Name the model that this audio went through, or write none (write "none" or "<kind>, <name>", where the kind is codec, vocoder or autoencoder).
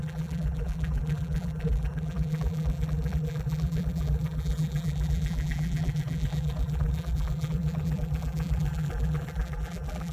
vocoder, BigVGAN v2